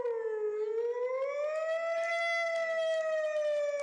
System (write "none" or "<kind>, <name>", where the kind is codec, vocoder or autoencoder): none